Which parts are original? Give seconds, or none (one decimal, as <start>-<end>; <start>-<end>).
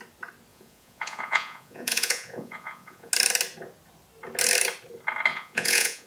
0.0-0.5; 3.1-5.3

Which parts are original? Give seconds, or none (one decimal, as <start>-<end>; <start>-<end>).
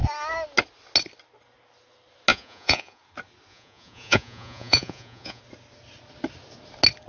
0.0-2.3; 3.0-3.5; 5.4-7.1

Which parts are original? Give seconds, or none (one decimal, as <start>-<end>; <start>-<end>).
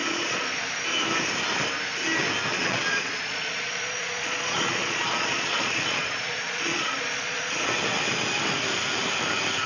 0.6-2.5; 7.7-9.7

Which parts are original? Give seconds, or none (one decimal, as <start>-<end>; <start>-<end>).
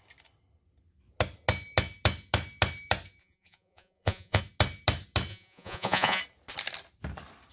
0.0-3.2; 4.4-5.3; 6.2-7.5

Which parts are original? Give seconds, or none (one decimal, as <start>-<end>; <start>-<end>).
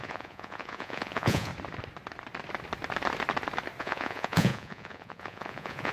1.5-3.8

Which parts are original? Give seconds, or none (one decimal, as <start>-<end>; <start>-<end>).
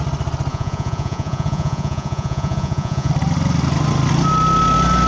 0.0-0.5; 3.1-5.1